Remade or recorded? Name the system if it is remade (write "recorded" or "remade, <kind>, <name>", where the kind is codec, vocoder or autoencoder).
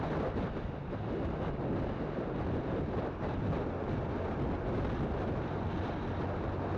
recorded